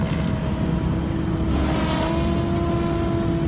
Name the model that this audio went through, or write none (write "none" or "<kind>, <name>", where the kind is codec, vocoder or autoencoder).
none